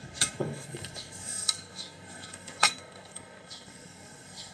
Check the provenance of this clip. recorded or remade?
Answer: remade